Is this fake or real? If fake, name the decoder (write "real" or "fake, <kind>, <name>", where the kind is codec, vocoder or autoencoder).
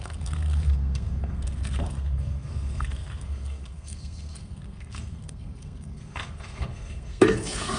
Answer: fake, codec, SNAC